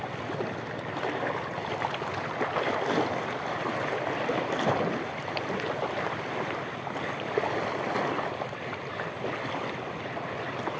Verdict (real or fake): real